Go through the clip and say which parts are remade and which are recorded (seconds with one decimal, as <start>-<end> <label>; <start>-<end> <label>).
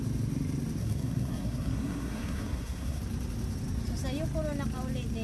0.0-0.8 recorded; 0.8-3.0 remade; 3.0-5.2 recorded